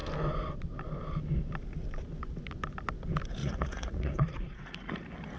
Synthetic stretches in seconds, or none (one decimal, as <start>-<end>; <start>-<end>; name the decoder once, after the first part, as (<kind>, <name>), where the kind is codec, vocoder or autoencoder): 3.4-4.9 (vocoder, Vocos)